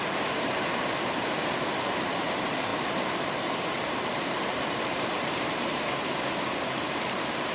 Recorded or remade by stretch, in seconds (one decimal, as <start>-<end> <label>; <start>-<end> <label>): 0.0-7.5 remade